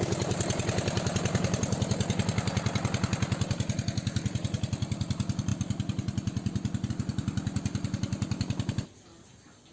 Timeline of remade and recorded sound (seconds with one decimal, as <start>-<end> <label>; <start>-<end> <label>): 0.0-9.7 recorded